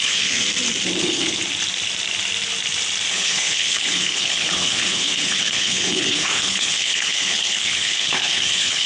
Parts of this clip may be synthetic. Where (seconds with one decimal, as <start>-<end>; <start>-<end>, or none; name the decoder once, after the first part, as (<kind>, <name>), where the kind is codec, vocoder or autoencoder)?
0.0-0.4 (codec, HILCodec); 1.0-1.4; 3.1-8.9